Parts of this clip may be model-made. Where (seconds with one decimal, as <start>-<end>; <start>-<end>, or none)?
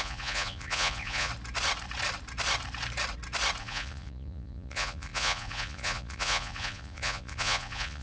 0.0-1.3; 3.6-8.0